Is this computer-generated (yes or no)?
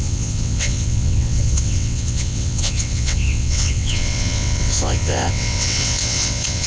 yes